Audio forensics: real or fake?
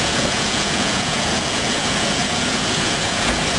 fake